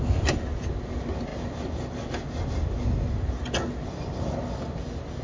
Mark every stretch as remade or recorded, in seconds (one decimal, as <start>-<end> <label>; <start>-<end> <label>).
0.0-5.2 recorded